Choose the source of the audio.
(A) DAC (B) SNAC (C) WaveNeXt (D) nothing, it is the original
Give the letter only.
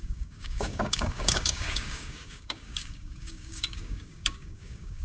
A